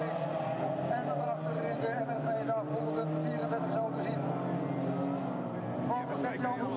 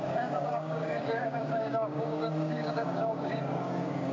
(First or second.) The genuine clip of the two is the first